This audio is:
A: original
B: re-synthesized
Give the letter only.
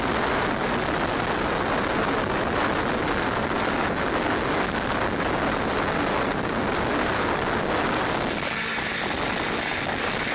A